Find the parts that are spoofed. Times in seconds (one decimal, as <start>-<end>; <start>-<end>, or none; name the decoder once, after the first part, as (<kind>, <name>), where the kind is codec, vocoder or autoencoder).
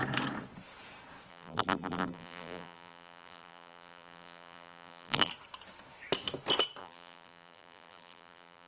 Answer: 1.3-5.3 (vocoder, BigVGAN v2); 6.8-8.7